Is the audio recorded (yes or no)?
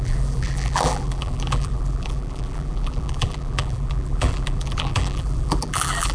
no